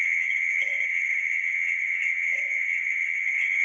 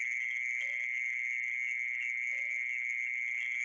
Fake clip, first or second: first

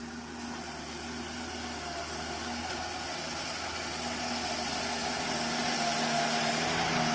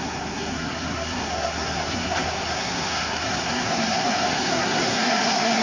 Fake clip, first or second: second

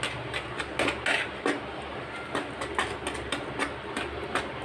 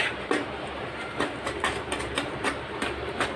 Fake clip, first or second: second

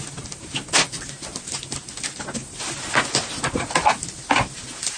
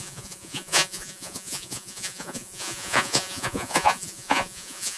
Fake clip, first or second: second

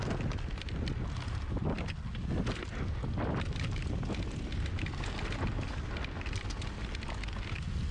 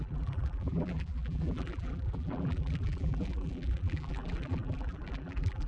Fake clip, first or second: second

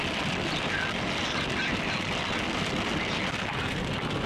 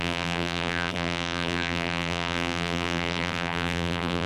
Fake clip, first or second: second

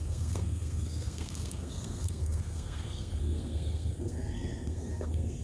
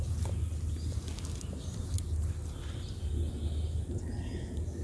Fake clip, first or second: first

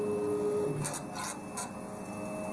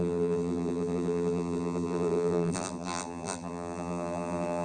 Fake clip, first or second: second